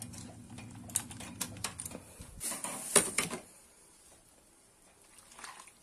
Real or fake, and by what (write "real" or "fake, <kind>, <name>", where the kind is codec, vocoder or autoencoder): real